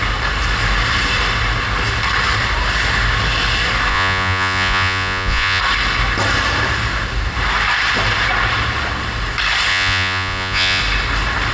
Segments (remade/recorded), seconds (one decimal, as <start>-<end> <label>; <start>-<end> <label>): 0.0-3.9 recorded; 3.9-5.6 remade; 5.6-9.7 recorded; 9.7-10.8 remade; 10.8-11.5 recorded